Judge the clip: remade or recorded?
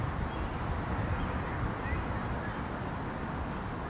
recorded